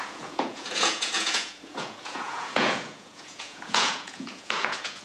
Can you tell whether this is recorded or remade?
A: remade